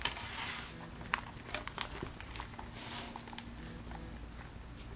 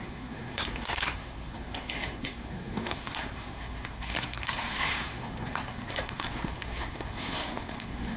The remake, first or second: second